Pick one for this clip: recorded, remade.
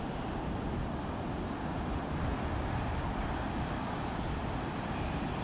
recorded